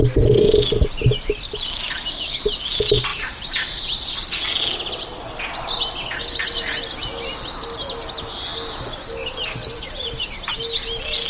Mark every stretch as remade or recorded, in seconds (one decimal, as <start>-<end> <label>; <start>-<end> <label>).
0.0-3.1 recorded; 3.1-3.8 remade; 3.8-9.6 recorded; 9.6-10.5 remade; 10.5-11.3 recorded